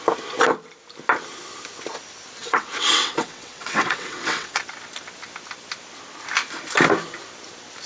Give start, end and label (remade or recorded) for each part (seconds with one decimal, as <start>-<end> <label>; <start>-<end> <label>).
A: 0.0-2.4 recorded; 2.4-4.6 remade; 4.6-7.9 recorded